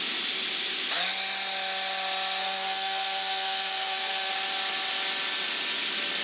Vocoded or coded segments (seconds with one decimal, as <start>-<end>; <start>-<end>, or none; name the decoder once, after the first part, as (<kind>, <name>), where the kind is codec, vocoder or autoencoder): 2.4-4.3 (codec, SNAC)